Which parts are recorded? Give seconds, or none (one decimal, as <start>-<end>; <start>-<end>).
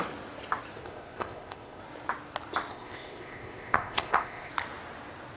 0.0-0.8; 1.8-2.7; 4.5-5.4